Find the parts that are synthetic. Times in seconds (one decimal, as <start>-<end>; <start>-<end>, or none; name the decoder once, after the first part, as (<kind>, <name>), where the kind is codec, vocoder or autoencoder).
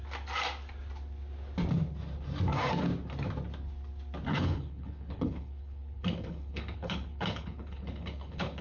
4.3-8.6 (codec, HILCodec)